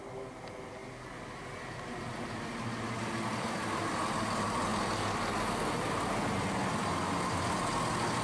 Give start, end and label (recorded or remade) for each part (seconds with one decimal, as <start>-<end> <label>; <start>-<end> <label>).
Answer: 0.0-3.3 recorded; 3.3-3.9 remade; 3.9-8.2 recorded